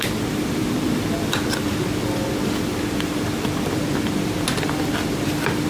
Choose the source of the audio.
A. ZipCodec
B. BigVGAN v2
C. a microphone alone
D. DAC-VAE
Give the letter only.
B